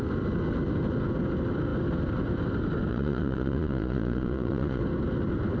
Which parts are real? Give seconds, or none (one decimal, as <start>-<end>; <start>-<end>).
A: 0.0-2.9; 4.8-5.6